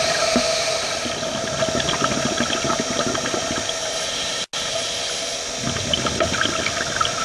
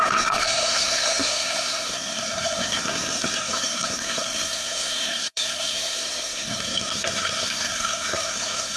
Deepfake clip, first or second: second